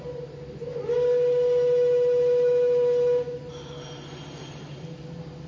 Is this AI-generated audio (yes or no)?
no